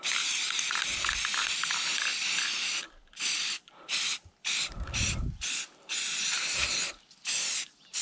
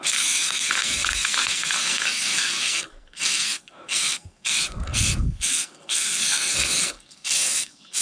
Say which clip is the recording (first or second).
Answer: first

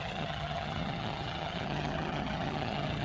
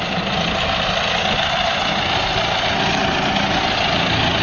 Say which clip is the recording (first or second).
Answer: second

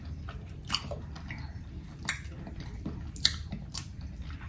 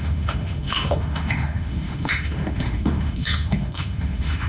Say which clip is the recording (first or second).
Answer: first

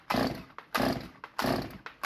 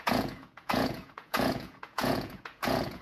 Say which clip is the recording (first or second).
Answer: first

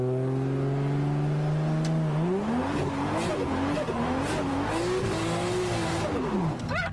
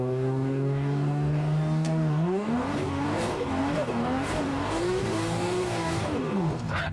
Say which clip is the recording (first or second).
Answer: first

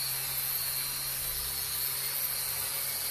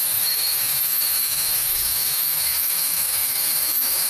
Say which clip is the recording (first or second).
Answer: first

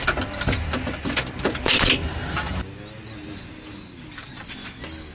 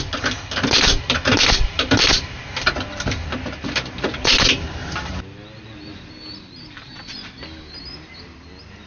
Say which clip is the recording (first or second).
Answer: first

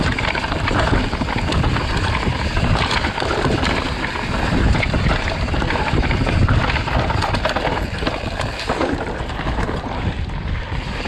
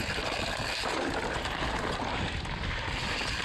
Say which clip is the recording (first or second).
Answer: second